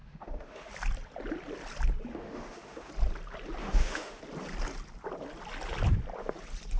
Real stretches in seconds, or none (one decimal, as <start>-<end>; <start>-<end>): 0.7-2.1; 2.9-3.6; 4.2-6.8